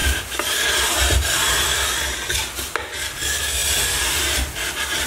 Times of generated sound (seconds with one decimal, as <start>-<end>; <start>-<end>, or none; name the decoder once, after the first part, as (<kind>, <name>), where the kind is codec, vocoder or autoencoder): none